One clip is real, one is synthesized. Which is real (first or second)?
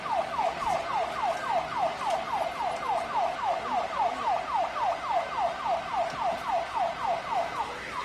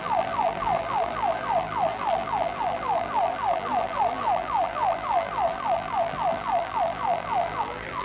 first